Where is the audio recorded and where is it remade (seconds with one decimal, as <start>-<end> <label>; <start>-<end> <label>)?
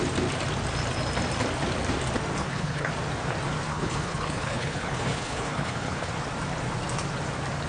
0.0-2.4 recorded; 2.4-2.9 remade; 2.9-3.7 recorded; 3.7-6.1 remade; 6.1-7.7 recorded